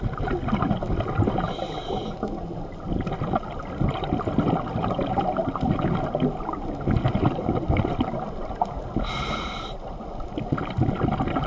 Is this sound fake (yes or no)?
no